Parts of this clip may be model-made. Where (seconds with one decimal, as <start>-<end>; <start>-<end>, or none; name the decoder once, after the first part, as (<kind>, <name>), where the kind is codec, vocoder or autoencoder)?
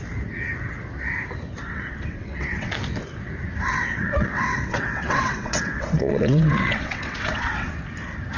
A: 1.7-2.7 (vocoder, WaveNeXt); 3.7-7.7